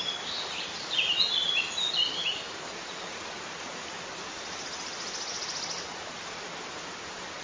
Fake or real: real